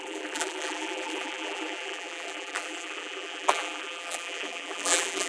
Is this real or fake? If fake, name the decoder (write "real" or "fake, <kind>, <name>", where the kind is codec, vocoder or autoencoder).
fake, vocoder, BigVGAN v2